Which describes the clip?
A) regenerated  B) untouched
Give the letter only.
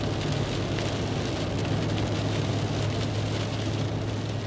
B